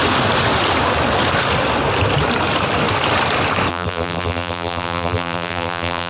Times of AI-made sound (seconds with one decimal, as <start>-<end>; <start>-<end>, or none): 3.7-6.1